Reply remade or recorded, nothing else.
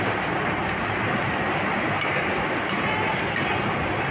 recorded